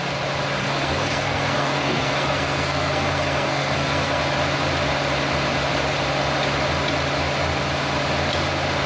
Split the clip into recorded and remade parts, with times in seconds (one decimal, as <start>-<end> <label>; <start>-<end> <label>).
0.0-0.6 recorded; 0.6-4.2 remade; 4.2-8.9 recorded